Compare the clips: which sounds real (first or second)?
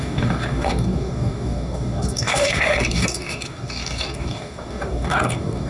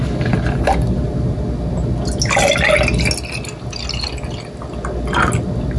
second